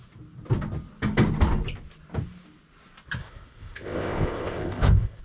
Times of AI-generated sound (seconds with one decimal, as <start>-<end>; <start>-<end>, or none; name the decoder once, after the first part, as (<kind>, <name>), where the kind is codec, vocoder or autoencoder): 3.2-5.2 (codec, ZipCodec)